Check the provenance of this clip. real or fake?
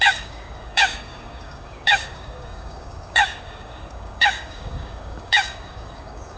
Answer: fake